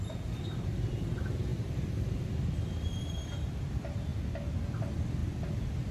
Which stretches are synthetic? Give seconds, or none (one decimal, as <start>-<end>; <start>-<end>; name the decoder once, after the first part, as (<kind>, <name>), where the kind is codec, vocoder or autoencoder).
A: 0.0-4.1 (vocoder, BigVGAN v2); 4.6-5.9

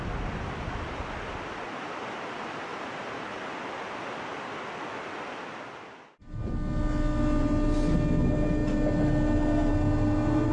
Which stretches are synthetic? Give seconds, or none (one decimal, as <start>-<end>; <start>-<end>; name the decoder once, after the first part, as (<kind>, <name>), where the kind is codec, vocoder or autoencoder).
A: 2.7-3.4 (vocoder, BigVGAN v2)

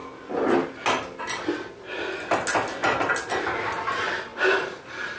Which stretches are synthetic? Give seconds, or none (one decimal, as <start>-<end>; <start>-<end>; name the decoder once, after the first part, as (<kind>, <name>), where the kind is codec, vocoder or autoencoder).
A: 4.3-5.2 (vocoder, BigVGAN v2)

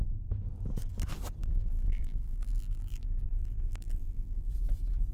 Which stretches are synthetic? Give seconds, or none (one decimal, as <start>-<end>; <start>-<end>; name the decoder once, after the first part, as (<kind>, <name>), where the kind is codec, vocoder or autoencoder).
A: 1.4-4.5 (vocoder, BigVGAN v2)

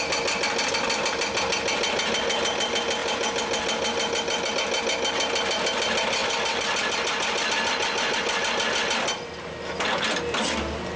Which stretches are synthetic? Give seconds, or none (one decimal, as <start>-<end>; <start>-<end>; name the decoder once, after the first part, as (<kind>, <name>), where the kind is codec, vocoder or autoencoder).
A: 3.0-4.5 (vocoder, BigVGAN v2); 6.2-7.5

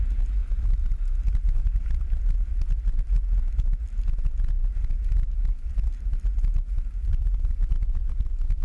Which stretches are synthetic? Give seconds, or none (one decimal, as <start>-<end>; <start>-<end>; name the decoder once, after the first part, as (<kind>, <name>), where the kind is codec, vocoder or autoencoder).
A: 0.4-2.2 (vocoder, BigVGAN v2)